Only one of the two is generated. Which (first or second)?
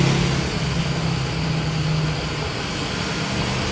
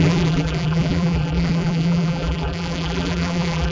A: second